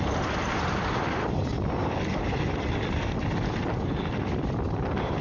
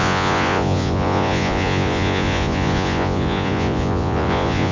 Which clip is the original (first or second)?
first